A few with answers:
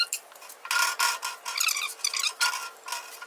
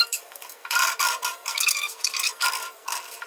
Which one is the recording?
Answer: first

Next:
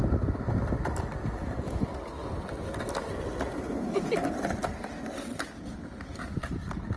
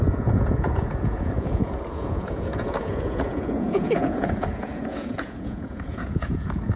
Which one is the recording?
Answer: first